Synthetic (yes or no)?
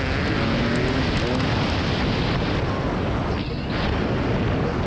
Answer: no